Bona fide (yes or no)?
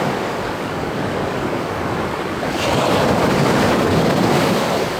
no